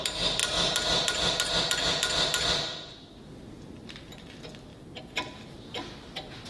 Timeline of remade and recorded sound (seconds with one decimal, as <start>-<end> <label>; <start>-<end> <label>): 0.0-6.5 recorded

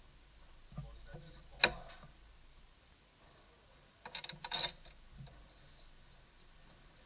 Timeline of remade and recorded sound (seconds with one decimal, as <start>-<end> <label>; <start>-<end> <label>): 0.0-7.1 recorded

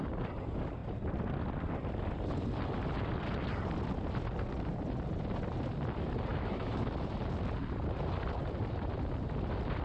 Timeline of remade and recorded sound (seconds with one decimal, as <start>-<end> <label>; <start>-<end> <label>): 0.0-6.3 recorded; 6.3-6.9 remade; 6.9-9.8 recorded

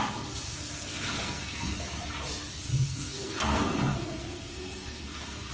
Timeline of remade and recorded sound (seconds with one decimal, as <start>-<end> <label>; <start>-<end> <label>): 0.0-0.5 recorded; 0.5-1.8 remade; 1.8-2.7 recorded; 2.7-5.5 remade

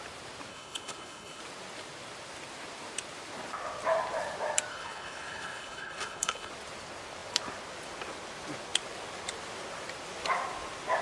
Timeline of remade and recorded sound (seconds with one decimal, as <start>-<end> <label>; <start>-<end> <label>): 0.0-0.5 recorded; 0.5-1.4 remade; 1.4-4.7 recorded; 4.7-6.5 remade; 6.5-11.0 recorded

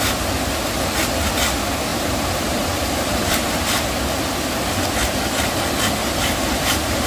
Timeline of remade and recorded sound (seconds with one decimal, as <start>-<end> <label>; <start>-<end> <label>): 0.0-1.9 recorded; 1.9-3.5 remade; 3.5-6.0 recorded; 6.0-7.1 remade

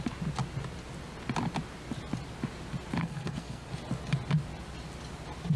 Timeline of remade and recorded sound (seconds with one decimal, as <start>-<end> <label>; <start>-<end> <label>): 0.0-3.0 recorded; 3.0-3.7 remade; 3.7-5.6 recorded